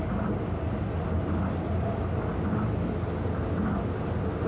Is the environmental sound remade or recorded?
recorded